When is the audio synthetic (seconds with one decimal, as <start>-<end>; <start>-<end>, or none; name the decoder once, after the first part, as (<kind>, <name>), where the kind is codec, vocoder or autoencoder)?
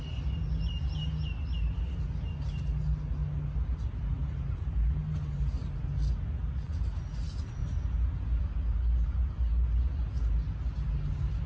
none